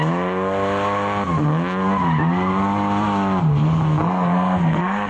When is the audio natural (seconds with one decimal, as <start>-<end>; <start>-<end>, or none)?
0.0-4.0